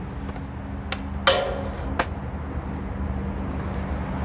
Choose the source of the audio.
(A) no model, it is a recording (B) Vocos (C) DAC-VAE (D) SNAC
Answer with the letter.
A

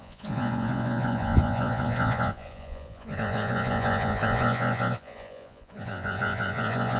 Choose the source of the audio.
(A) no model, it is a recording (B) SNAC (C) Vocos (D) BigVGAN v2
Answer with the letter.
C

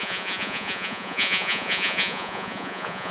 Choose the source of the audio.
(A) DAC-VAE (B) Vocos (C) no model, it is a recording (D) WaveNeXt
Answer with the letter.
B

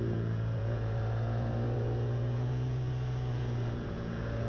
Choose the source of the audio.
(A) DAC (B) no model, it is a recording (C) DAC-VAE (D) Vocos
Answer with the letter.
D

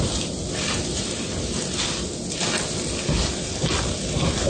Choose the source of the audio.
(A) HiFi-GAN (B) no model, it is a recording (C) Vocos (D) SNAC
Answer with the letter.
B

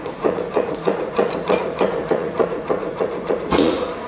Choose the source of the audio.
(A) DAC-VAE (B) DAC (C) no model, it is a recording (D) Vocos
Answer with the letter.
D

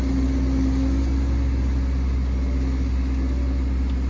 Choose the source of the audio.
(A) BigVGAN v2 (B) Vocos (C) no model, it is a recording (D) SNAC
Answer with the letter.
C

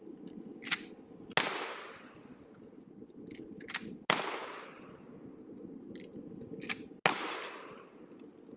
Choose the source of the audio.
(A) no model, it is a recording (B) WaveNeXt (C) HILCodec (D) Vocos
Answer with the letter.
A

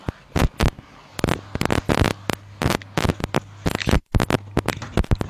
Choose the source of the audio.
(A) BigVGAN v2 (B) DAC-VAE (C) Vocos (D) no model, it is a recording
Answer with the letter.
D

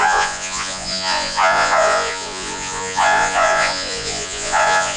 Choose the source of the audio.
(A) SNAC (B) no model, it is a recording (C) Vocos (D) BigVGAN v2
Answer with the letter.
C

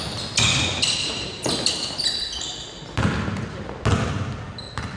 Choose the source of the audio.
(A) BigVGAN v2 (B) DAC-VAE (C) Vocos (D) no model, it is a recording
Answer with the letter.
D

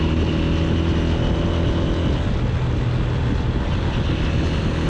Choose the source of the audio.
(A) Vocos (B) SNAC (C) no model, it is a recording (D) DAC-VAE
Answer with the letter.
C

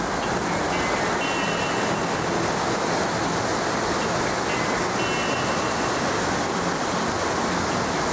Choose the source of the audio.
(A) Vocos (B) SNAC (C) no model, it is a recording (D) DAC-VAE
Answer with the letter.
C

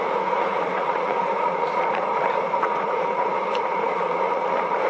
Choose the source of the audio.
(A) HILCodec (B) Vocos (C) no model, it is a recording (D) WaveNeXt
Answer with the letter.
B